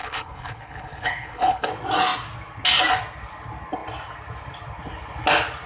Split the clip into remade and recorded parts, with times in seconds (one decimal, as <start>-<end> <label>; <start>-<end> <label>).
0.0-1.7 remade; 1.7-5.7 recorded